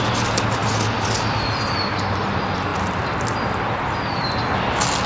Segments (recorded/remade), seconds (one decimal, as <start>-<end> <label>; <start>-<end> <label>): 0.0-5.1 recorded